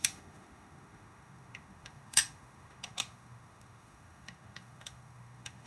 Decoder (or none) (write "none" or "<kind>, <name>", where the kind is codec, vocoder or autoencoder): autoencoder, DAC-VAE